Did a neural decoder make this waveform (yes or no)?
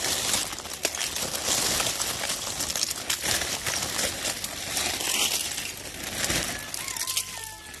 no